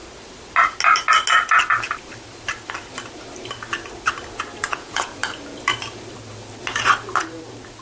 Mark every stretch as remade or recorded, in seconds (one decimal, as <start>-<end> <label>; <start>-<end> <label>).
0.0-4.7 recorded; 4.7-5.2 remade; 5.2-7.8 recorded